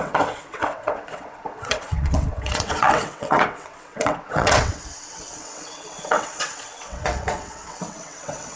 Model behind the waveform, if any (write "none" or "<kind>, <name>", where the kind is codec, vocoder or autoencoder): vocoder, WaveNeXt